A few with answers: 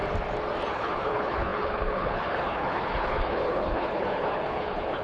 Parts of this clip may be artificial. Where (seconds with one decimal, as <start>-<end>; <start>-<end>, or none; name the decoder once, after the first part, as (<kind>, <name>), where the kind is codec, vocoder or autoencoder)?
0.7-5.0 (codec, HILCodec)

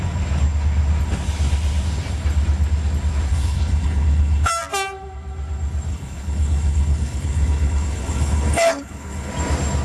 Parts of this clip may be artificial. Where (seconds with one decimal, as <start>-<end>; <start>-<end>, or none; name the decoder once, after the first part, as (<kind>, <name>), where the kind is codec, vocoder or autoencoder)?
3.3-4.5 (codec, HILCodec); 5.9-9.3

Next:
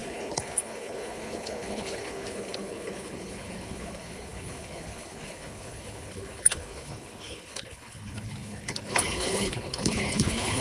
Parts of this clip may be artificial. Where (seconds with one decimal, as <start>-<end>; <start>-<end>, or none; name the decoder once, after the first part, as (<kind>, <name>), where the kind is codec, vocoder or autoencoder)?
0.0-10.6 (codec, HILCodec)

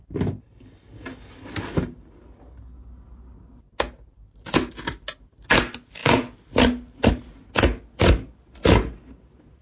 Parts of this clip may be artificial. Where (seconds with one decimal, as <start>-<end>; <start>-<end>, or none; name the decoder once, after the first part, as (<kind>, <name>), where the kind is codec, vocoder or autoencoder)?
none

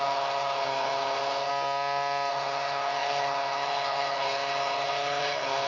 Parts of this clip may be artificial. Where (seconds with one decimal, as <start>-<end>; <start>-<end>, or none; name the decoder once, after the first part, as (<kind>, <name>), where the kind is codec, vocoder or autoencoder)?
0.0-1.5 (codec, HILCodec); 2.3-5.7

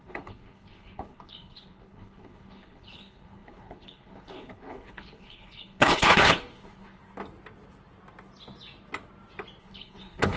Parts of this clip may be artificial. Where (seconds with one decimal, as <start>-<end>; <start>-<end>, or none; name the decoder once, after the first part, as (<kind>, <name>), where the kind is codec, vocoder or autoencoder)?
0.0-7.0 (codec, HILCodec); 9.6-10.4

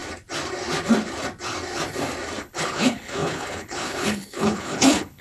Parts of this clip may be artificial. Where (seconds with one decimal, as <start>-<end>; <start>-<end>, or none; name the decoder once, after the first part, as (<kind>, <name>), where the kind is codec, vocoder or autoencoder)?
2.4-5.2 (codec, HILCodec)

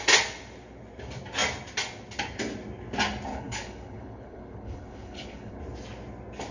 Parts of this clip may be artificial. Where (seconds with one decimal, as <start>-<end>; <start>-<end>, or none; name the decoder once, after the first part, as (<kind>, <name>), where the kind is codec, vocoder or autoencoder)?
3.3-5.6 (codec, HILCodec)